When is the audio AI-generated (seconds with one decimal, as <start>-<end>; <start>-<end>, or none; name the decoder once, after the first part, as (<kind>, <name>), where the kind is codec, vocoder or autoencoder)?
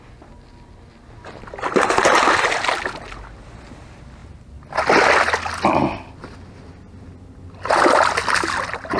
none